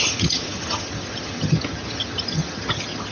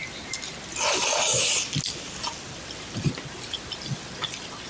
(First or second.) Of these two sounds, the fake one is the first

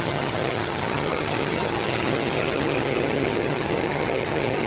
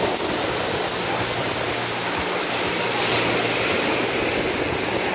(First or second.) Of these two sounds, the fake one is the first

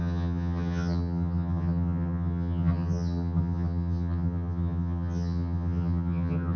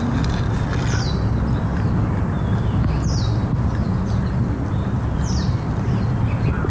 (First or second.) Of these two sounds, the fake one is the first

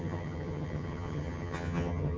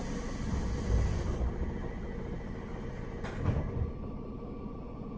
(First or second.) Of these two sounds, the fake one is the first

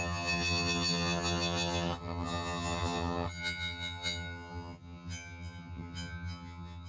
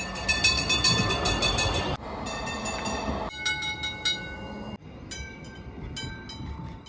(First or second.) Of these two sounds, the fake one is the first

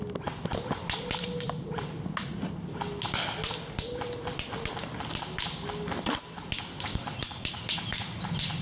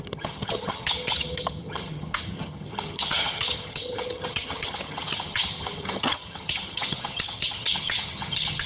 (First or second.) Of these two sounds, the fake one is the second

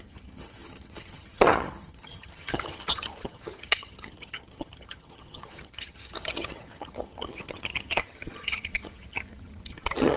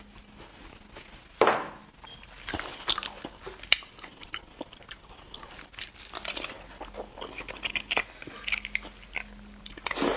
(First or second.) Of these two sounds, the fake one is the first